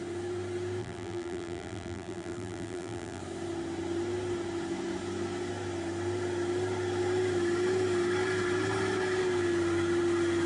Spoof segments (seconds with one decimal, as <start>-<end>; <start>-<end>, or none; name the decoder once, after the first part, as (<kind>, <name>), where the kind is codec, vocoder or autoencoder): 0.8-3.2 (vocoder, BigVGAN v2)